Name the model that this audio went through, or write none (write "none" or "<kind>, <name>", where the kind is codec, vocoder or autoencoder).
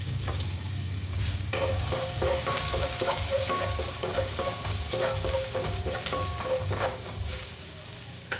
codec, DAC